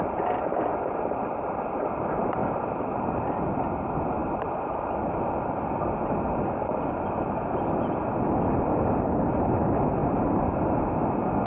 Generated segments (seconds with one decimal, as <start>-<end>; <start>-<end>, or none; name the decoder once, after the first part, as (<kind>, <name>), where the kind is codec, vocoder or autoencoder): 0.7-1.6 (vocoder, BigVGAN v2); 2.4-3.3; 4.2-5.1; 10.0-11.1